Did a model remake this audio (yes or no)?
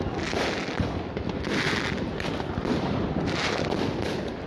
no